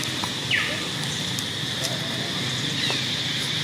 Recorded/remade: recorded